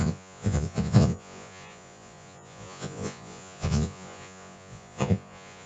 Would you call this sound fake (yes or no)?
yes